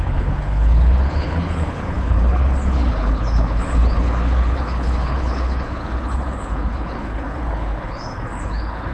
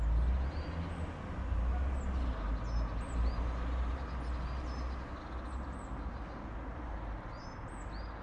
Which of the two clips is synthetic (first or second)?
first